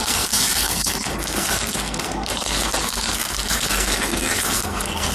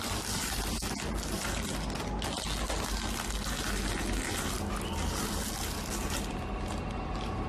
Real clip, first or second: second